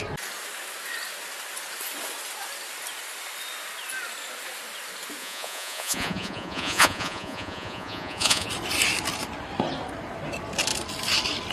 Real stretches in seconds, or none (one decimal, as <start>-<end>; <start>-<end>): 0.0-5.2; 8.5-11.5